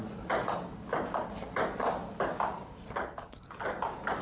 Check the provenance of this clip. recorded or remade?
recorded